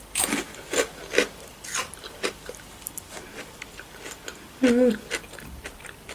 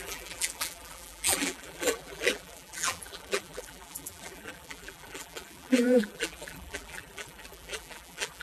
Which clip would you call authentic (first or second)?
first